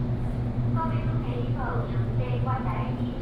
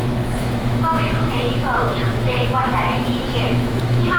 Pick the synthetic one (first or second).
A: second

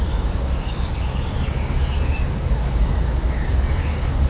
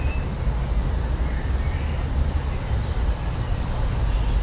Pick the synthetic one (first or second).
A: first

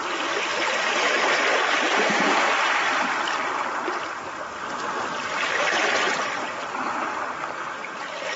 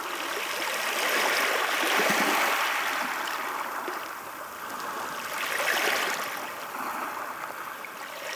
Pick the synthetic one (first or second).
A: first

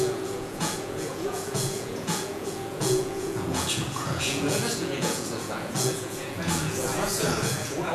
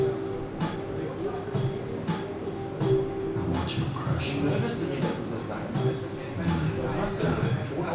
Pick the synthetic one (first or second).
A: first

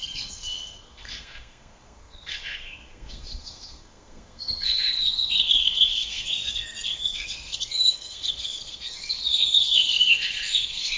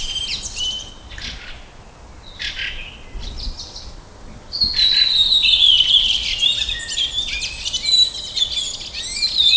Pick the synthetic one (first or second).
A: first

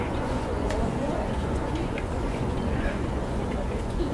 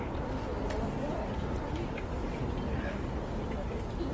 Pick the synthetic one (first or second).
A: first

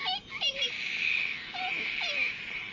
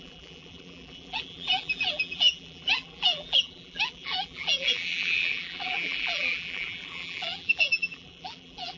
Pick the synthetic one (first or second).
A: second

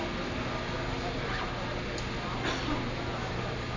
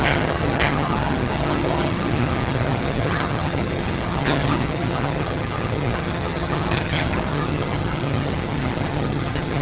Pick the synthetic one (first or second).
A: second